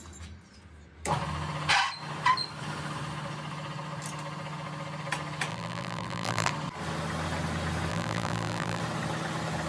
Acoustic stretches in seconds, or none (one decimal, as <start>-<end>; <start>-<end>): 0.0-5.5; 6.5-7.9; 8.8-9.7